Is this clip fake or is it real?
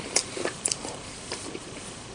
fake